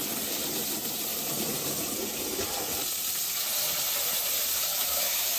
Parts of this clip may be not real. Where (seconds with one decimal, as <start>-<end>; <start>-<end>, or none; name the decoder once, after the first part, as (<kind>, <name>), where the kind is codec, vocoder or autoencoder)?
4.7-5.4 (autoencoder, DAC-VAE)